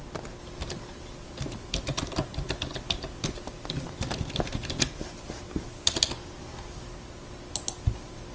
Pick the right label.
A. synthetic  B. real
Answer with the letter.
B